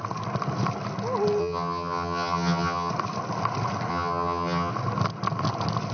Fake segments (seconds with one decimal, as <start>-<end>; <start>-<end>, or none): 1.4-2.9; 3.9-4.7